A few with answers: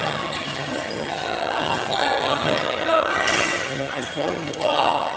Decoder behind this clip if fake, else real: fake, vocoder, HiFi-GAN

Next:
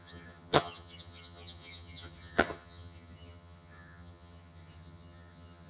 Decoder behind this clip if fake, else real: fake, vocoder, HiFi-GAN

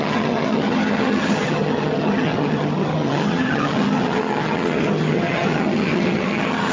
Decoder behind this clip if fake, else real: fake, vocoder, HiFi-GAN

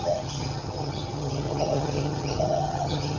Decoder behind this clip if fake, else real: fake, vocoder, HiFi-GAN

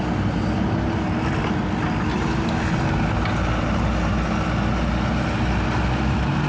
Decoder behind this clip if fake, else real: real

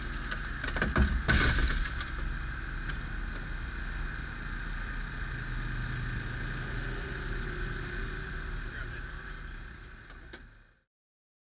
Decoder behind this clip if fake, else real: real